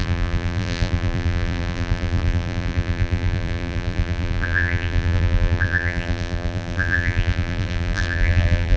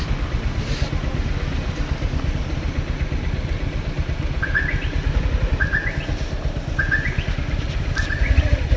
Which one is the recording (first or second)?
second